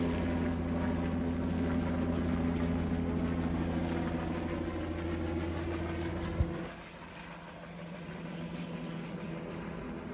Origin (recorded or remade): recorded